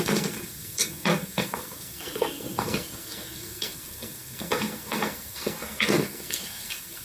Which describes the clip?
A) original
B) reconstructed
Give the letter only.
B